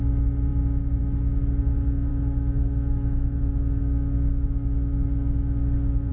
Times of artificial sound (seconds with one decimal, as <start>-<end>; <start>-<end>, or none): 2.1-6.1